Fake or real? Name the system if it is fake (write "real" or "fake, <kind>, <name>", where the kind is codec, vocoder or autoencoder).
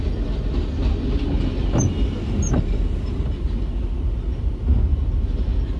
real